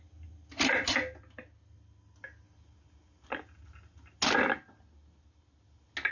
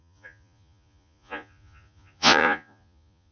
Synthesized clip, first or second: second